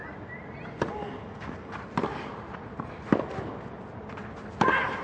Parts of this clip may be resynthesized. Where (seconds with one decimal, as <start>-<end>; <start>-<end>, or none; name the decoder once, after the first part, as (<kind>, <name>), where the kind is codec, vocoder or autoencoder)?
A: none